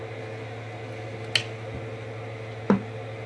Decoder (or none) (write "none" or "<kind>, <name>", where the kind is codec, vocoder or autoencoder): none